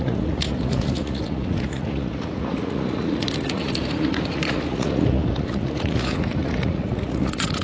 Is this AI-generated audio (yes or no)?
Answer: yes